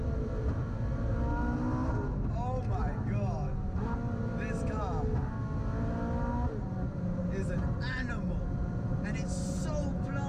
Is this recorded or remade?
recorded